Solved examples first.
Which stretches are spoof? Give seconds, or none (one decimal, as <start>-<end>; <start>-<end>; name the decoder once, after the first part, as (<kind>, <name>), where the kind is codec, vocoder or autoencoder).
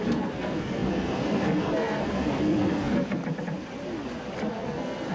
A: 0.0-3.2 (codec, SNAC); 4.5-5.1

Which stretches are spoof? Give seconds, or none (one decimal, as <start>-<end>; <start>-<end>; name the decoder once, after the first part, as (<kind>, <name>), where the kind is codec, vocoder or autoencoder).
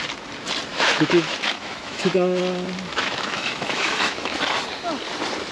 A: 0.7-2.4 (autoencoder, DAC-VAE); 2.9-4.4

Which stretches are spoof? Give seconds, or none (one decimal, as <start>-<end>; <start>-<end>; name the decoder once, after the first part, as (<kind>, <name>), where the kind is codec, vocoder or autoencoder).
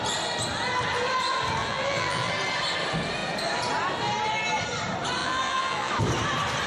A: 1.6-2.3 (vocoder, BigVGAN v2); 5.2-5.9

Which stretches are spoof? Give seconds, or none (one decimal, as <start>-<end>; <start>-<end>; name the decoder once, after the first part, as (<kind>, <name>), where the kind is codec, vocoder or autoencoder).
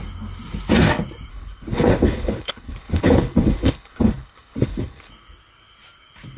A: 1.3-5.1 (codec, HILCodec)